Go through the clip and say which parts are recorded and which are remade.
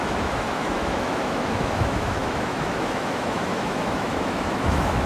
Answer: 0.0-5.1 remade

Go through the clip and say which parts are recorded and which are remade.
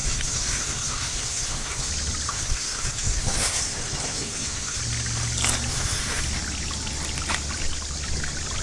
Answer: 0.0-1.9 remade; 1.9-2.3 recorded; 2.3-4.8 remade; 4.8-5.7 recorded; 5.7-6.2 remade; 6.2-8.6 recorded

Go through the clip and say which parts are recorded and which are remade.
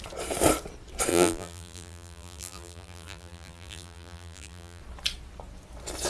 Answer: 0.0-1.1 recorded; 1.1-4.8 remade; 4.8-6.1 recorded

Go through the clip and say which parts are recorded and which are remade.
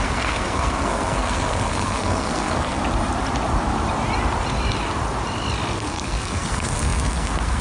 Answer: 0.0-2.8 remade; 2.8-5.8 recorded; 5.8-7.6 remade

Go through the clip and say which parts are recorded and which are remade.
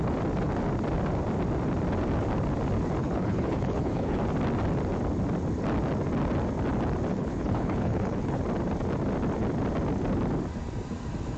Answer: 0.0-3.0 recorded; 3.0-4.2 remade; 4.2-7.1 recorded; 7.1-8.4 remade; 8.4-11.4 recorded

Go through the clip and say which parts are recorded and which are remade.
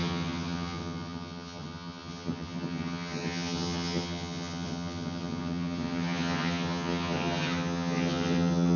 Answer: 0.0-8.8 remade